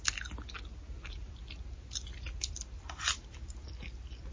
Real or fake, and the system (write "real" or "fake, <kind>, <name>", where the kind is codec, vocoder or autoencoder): real